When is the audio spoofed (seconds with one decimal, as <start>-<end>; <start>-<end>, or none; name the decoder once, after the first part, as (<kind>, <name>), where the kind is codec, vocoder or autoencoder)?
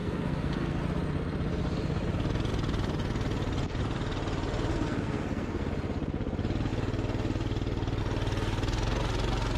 0.0-0.8 (codec, SNAC); 4.7-5.7